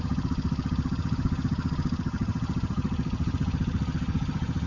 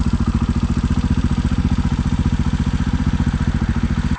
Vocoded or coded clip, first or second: first